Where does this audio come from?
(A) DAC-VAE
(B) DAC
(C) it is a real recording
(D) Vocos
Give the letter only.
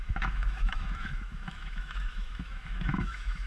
A